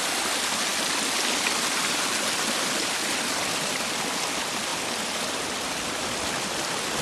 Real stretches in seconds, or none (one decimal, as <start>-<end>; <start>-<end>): 0.0-7.0